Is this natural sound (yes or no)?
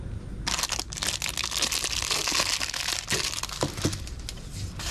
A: yes